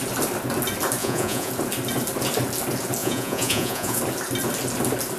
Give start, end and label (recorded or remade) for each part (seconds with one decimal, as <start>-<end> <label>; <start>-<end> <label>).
0.0-1.0 recorded; 1.0-1.5 remade; 1.5-3.0 recorded; 3.0-4.0 remade; 4.0-5.2 recorded